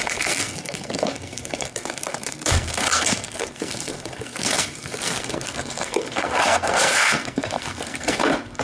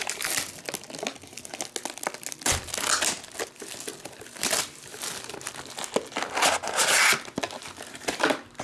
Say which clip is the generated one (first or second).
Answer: first